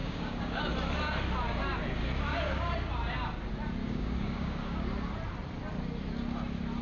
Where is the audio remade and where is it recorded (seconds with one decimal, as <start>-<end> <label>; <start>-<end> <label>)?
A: 0.0-0.6 remade; 0.6-3.8 recorded; 3.8-4.8 remade; 4.8-6.8 recorded